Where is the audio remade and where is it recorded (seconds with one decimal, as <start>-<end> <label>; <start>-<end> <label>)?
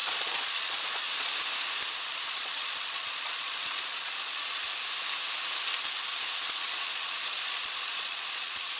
0.0-1.3 remade; 1.3-2.1 recorded; 2.1-4.6 remade; 4.6-6.4 recorded; 6.4-8.8 remade